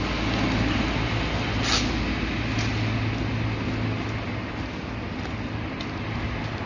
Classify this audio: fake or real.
real